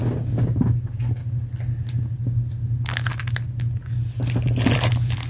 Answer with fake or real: real